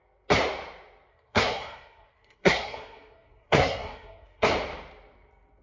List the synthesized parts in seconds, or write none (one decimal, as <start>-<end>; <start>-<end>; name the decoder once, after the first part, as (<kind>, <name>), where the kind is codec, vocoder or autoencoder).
1.1-4.5 (codec, SNAC)